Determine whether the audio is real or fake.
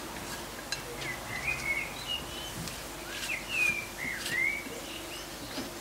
real